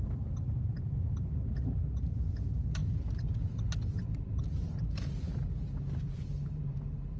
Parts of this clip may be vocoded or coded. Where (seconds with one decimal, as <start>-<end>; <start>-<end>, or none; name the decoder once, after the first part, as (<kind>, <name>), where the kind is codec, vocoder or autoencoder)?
0.0-7.2 (vocoder, BigVGAN v2)